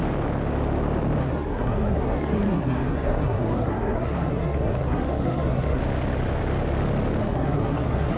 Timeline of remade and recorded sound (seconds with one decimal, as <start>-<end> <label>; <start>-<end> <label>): 0.0-1.2 recorded; 1.2-5.8 remade; 5.8-7.2 recorded; 7.2-8.2 remade